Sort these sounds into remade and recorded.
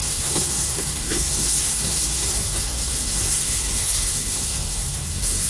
remade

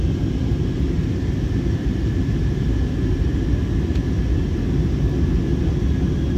recorded